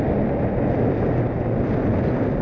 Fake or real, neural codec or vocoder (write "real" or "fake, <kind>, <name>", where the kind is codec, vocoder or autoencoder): real